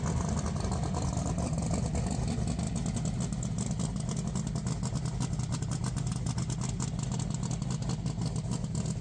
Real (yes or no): yes